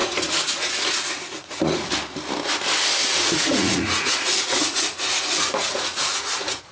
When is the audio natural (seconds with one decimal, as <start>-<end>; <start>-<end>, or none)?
1.9-3.0